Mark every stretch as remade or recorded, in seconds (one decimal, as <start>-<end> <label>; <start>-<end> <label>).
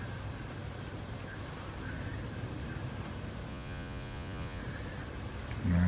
0.0-3.5 recorded; 3.5-4.6 remade; 4.6-5.9 recorded